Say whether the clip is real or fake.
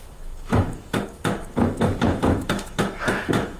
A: fake